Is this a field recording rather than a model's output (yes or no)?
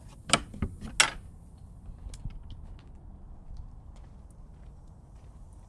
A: yes